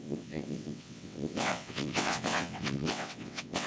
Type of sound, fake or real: fake